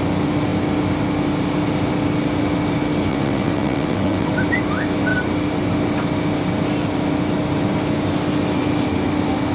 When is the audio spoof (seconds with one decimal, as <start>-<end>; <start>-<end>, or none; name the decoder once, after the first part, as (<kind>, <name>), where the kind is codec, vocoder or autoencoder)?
3.1-4.3 (vocoder, WaveNeXt)

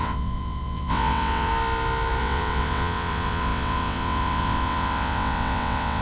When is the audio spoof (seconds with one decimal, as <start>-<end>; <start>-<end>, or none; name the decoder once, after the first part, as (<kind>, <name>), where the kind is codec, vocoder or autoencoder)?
0.0-1.5 (vocoder, WaveNeXt); 2.2-6.0

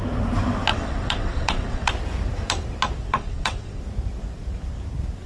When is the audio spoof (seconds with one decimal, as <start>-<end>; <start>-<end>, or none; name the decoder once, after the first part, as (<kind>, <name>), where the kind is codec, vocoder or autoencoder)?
0.7-1.9 (vocoder, WaveNeXt); 3.1-3.8

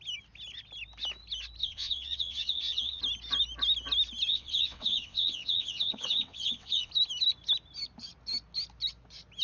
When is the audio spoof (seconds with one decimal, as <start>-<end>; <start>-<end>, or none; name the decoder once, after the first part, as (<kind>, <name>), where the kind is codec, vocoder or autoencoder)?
1.6-3.0 (vocoder, WaveNeXt); 4.3-6.9

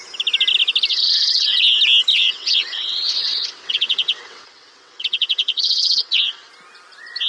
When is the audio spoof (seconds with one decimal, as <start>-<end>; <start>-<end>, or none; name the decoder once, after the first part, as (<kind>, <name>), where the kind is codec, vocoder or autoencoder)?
0.9-1.6 (vocoder, WaveNeXt); 2.1-6.5

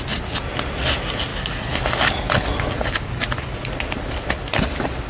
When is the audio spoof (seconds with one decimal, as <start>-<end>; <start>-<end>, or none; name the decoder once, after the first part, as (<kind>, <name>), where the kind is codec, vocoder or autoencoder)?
none

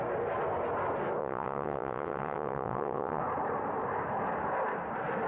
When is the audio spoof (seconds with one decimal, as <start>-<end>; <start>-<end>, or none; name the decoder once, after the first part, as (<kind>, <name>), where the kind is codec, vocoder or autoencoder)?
1.2-3.2 (vocoder, WaveNeXt)